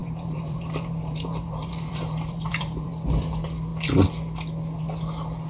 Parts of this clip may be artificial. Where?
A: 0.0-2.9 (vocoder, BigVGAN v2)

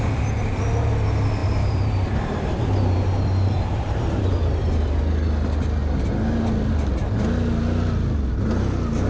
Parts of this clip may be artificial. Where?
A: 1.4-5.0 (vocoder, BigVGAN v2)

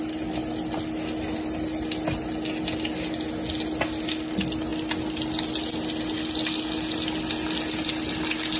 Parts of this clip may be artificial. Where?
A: none

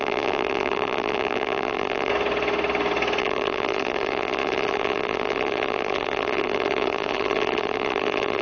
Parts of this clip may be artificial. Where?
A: 0.0-2.1 (vocoder, BigVGAN v2); 3.2-8.4

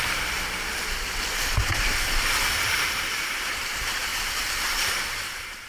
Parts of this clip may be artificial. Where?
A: 0.0-0.7 (vocoder, BigVGAN v2); 2.6-4.1; 4.6-5.7